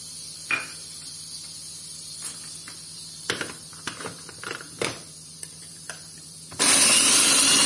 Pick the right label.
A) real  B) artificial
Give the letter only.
B